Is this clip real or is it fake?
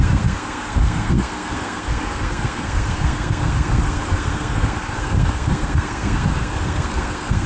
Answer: fake